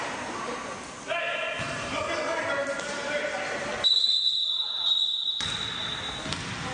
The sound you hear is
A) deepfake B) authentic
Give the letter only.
B